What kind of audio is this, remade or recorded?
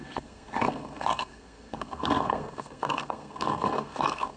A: remade